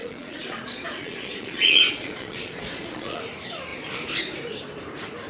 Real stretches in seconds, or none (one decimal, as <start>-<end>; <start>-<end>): 3.2-5.3